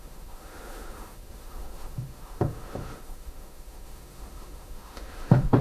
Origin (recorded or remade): remade